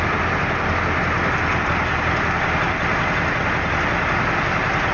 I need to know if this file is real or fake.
real